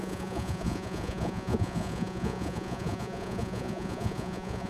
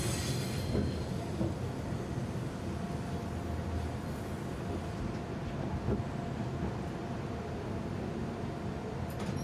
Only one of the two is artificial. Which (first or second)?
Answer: first